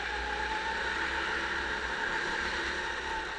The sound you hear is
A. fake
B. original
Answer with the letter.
B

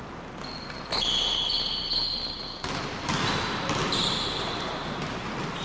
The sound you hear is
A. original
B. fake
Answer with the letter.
A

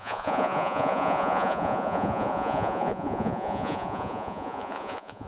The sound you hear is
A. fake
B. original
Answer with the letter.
A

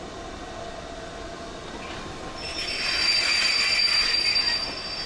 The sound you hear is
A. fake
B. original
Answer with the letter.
B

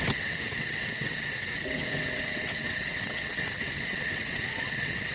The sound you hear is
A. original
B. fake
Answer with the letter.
B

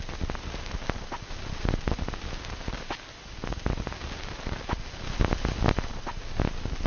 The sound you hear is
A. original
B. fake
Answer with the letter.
A